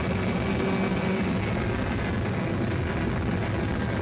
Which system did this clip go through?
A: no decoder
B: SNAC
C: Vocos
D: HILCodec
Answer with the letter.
A